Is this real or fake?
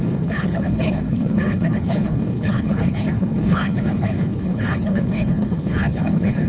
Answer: fake